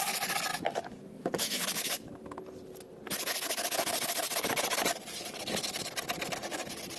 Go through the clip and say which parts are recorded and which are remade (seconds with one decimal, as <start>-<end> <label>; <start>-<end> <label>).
0.0-0.5 recorded; 0.5-2.4 remade; 2.4-7.0 recorded